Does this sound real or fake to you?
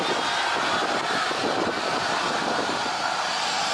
real